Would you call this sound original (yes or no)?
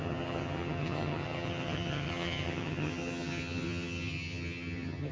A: no